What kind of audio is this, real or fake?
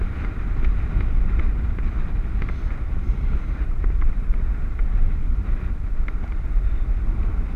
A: fake